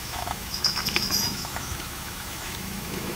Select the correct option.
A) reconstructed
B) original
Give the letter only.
A